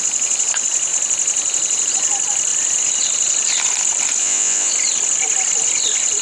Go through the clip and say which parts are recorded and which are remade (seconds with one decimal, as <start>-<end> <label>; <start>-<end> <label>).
0.0-4.2 recorded; 4.2-4.7 remade; 4.7-6.2 recorded